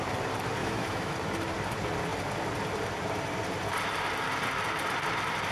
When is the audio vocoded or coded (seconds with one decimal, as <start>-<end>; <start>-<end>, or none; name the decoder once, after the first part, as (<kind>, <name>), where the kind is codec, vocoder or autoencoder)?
0.6-1.1 (autoencoder, DAC-VAE)